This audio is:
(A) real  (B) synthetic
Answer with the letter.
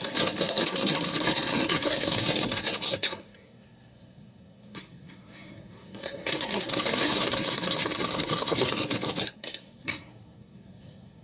B